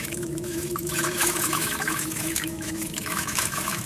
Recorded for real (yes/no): no